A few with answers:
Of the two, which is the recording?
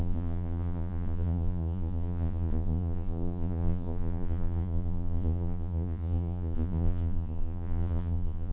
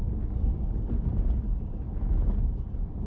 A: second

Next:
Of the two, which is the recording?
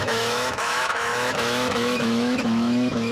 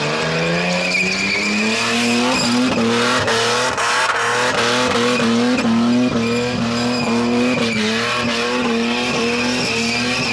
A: second